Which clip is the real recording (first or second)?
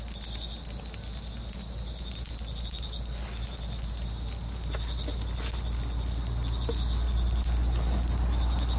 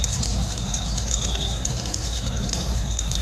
first